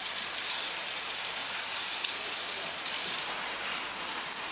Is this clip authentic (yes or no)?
no